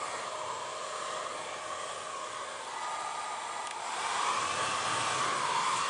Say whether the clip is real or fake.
real